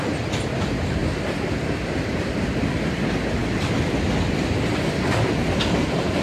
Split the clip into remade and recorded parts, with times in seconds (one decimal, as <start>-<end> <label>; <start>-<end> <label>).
0.0-1.0 recorded; 1.0-2.5 remade; 2.5-3.4 recorded; 3.4-5.3 remade; 5.3-6.2 recorded